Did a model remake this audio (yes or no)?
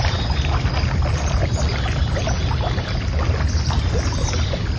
no